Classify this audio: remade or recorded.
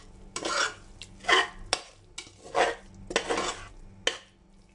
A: recorded